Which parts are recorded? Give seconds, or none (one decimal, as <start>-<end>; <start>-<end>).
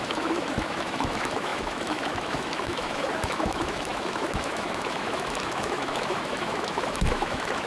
none